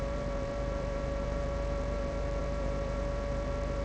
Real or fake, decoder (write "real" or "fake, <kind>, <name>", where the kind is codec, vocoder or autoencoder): fake, vocoder, BigVGAN v2